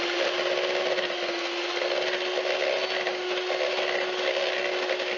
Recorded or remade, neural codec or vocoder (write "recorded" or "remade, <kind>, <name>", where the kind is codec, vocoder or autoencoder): recorded